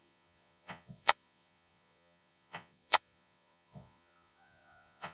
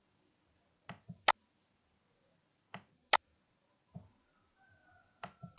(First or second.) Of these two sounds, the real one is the second